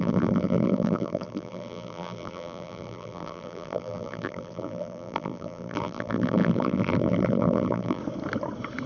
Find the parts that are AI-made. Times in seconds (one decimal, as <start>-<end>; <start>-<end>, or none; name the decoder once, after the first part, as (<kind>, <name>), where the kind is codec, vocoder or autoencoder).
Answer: 0.0-8.0 (vocoder, BigVGAN v2)